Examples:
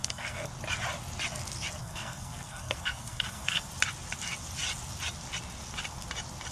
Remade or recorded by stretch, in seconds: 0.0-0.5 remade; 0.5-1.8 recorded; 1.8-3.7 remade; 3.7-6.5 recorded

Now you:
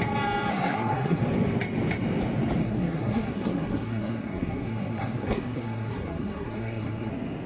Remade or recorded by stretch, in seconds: 0.0-0.5 recorded; 0.5-1.2 remade; 1.2-2.6 recorded; 2.6-7.1 remade; 7.1-7.5 recorded

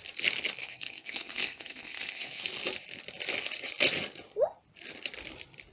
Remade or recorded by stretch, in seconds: 0.0-0.6 recorded; 0.6-2.4 remade; 2.4-5.7 recorded

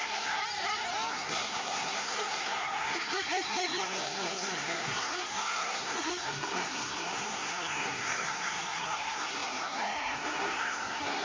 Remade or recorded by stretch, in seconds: 0.0-0.4 remade; 0.4-1.1 recorded; 1.1-11.2 remade

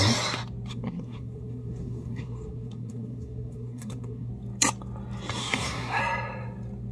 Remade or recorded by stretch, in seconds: 0.0-0.7 recorded; 0.7-4.3 remade; 4.3-5.4 recorded; 5.4-6.0 remade; 6.0-6.9 recorded

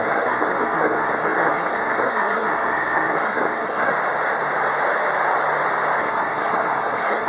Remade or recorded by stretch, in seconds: 0.0-3.9 remade; 3.9-6.0 recorded; 6.0-7.3 remade